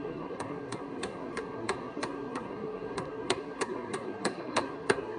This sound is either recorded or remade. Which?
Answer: remade